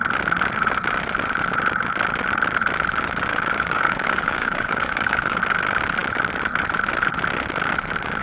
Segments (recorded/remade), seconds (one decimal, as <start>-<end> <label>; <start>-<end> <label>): 0.0-3.3 recorded; 3.3-5.4 remade; 5.4-8.2 recorded